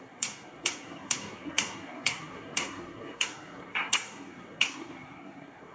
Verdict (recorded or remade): remade